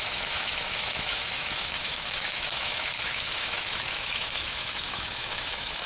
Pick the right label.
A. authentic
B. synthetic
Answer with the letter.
B